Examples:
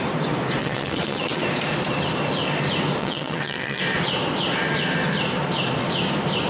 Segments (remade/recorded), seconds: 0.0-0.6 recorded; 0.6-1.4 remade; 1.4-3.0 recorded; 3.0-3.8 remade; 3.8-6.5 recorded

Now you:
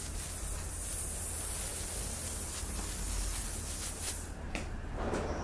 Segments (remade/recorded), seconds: 0.0-5.4 recorded

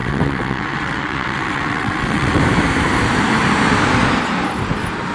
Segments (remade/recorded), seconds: 0.0-2.4 remade; 2.4-5.1 recorded